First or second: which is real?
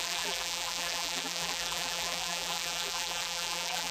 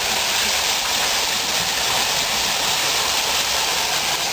second